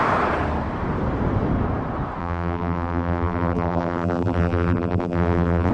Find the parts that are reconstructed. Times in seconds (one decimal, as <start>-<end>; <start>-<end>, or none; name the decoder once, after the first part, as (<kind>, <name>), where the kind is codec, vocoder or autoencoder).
2.2-5.7 (vocoder, BigVGAN v2)